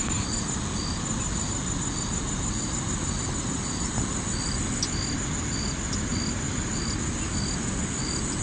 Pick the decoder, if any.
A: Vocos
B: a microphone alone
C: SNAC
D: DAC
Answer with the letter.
B